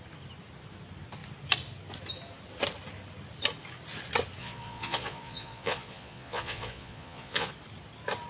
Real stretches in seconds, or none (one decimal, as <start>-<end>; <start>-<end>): 0.0-4.4; 7.5-8.3